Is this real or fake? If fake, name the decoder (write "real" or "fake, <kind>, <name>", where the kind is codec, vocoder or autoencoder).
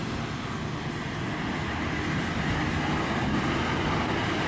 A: real